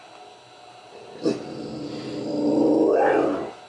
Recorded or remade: recorded